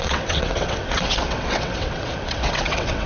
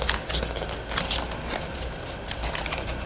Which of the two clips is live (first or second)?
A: second